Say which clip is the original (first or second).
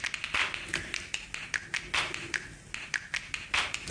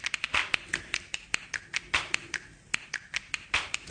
first